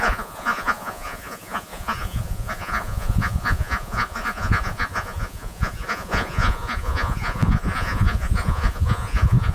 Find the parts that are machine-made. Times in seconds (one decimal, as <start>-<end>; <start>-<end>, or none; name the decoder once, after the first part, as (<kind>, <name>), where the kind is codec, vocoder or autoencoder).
0.0-9.5 (vocoder, Vocos)